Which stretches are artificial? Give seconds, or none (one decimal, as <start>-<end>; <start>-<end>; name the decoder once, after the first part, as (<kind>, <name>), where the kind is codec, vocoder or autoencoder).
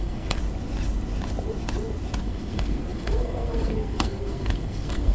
0.0-0.4 (codec, SNAC); 2.2-5.1